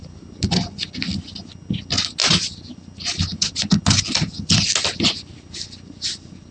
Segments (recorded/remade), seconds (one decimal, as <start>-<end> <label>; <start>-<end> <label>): 0.0-6.5 recorded